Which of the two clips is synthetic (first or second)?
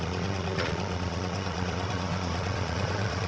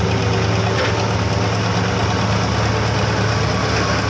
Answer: first